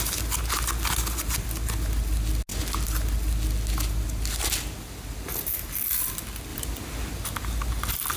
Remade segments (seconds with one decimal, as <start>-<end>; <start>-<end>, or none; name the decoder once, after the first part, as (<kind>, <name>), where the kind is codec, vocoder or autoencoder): none